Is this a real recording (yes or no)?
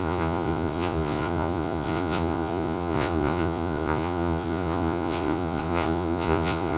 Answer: no